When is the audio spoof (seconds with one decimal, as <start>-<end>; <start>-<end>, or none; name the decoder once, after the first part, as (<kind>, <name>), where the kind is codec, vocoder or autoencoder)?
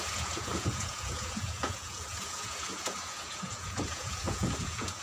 0.0-5.0 (vocoder, Vocos)